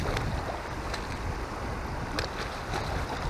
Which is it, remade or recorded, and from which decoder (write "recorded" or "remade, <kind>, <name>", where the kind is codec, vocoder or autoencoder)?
recorded